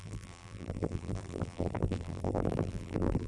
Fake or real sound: fake